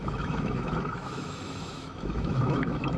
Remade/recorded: remade